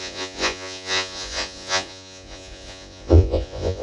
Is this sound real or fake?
fake